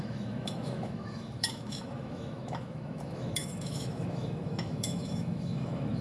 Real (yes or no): no